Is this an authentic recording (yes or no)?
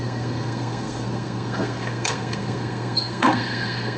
no